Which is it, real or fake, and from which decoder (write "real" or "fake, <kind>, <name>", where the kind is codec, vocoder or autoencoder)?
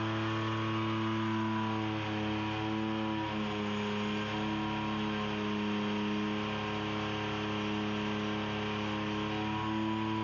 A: real